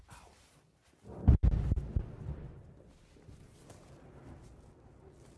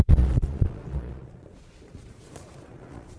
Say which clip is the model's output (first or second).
second